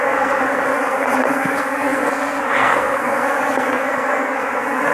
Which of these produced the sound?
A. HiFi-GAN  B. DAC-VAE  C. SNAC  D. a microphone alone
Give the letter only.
C